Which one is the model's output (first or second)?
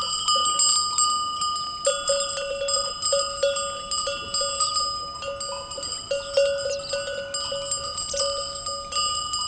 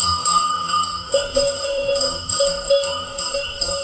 second